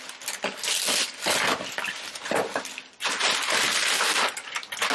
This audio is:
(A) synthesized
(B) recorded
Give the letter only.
B